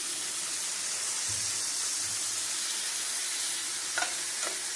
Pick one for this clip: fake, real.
real